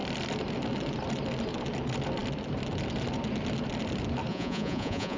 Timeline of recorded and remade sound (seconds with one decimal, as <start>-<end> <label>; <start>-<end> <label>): 0.0-4.3 recorded; 4.3-5.2 remade